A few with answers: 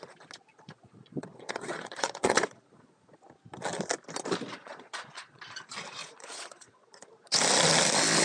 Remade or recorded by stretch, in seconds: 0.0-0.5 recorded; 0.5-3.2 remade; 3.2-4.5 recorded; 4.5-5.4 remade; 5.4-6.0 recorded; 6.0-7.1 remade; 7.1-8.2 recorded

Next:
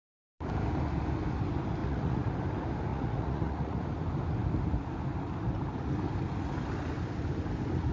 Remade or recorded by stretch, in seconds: 0.0-1.8 recorded; 1.8-2.3 remade; 2.3-2.9 recorded; 2.9-3.8 remade; 3.8-7.9 recorded